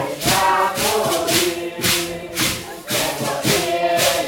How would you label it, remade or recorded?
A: remade